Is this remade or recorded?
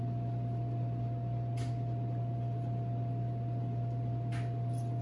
recorded